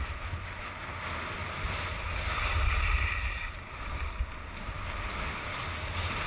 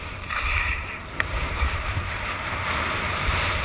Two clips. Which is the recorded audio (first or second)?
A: first